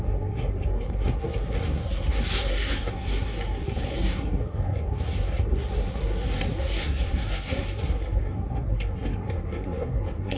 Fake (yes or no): yes